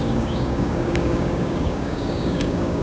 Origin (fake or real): fake